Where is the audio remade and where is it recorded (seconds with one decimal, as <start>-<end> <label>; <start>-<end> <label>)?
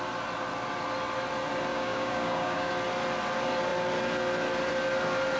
0.0-1.7 recorded; 1.7-2.7 remade; 2.7-5.4 recorded